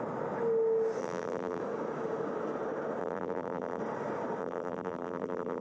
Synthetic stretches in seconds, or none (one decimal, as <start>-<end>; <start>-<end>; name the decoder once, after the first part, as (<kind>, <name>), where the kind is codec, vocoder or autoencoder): 1.0-1.6 (vocoder, BigVGAN v2); 3.0-3.8; 4.4-5.6